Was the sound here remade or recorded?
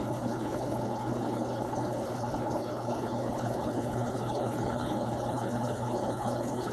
remade